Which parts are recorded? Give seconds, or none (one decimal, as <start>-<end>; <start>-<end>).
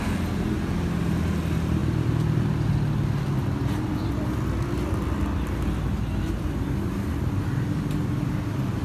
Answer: 0.0-8.8